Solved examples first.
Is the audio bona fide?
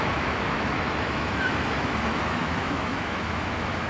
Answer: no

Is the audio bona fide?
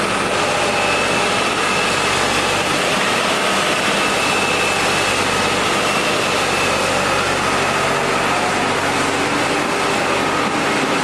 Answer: yes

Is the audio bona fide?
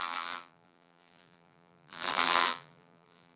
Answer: no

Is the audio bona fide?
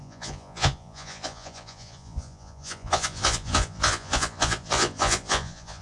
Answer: no